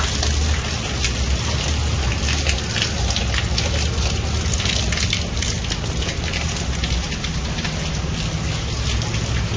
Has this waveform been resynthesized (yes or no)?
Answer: no